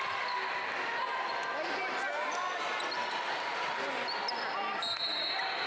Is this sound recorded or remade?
recorded